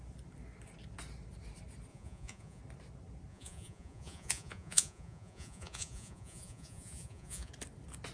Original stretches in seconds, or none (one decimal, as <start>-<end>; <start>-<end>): 0.0-1.9; 2.6-3.3; 7.5-8.1